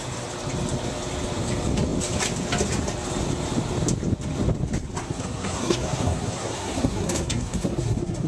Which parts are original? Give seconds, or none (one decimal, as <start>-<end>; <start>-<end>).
0.0-5.0